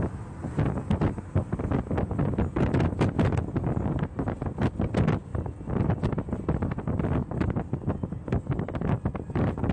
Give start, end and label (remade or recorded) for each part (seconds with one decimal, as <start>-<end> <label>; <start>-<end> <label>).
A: 0.0-9.7 recorded

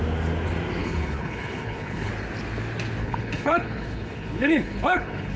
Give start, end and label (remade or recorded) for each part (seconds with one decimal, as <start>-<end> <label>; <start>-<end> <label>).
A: 0.0-0.8 recorded; 0.8-2.1 remade; 2.1-3.0 recorded; 3.0-5.4 remade

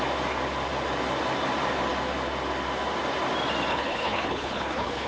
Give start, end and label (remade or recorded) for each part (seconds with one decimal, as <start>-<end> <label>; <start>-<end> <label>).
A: 0.0-3.7 recorded; 3.7-5.1 remade

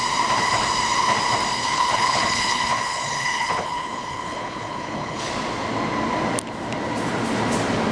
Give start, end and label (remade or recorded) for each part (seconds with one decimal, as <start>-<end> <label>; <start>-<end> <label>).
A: 0.0-1.5 recorded; 1.5-5.3 remade; 5.3-7.9 recorded

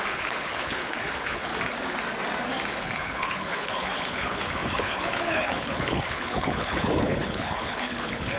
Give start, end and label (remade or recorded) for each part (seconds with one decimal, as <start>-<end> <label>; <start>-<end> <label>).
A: 0.0-1.5 remade; 1.5-2.7 recorded; 2.7-8.4 remade

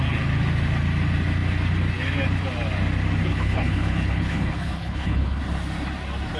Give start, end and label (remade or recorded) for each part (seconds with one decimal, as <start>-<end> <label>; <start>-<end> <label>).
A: 0.0-3.3 recorded; 3.3-5.4 remade; 5.4-6.4 recorded

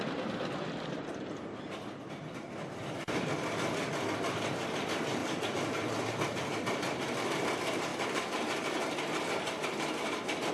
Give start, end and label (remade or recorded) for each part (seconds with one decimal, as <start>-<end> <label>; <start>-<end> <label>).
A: 0.0-10.5 recorded